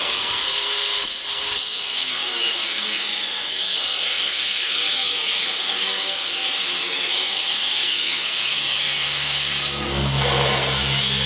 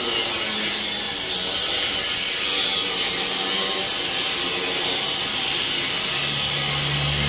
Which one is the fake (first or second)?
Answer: first